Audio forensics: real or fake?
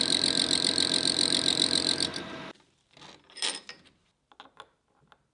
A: real